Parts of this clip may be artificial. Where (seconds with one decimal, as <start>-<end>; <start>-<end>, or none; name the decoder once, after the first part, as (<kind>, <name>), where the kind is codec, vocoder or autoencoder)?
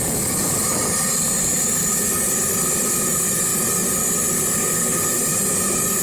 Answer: 4.9-5.5 (vocoder, BigVGAN v2)